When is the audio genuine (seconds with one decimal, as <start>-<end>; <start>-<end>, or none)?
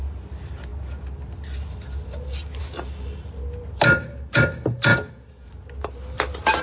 0.0-4.9; 5.5-6.6